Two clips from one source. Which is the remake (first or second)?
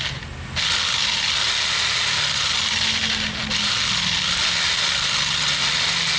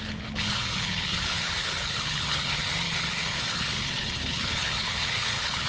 second